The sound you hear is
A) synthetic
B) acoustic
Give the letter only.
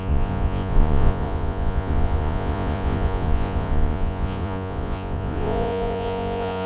A